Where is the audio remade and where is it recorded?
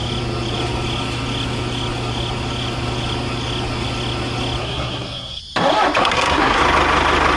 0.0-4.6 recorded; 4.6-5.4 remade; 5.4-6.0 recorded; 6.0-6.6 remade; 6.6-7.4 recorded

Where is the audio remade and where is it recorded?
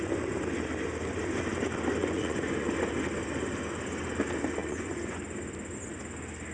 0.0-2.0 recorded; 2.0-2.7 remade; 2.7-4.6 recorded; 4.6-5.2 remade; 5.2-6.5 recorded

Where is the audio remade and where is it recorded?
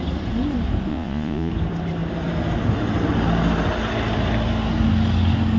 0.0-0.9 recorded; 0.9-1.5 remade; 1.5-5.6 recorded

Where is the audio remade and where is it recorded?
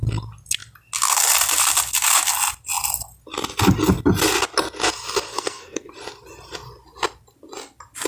0.0-5.3 recorded; 5.3-5.9 remade; 5.9-8.1 recorded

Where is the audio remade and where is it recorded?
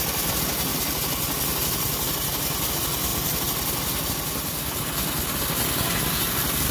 0.0-0.7 remade; 0.7-2.7 recorded; 2.7-3.1 remade; 3.1-6.3 recorded; 6.3-6.7 remade